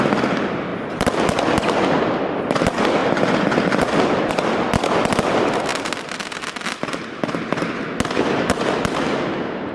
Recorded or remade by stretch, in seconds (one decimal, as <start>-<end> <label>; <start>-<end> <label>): 0.0-0.7 recorded; 0.7-2.4 remade; 2.4-3.0 recorded; 3.0-4.3 remade; 4.3-5.7 recorded; 5.7-7.6 remade; 7.6-9.7 recorded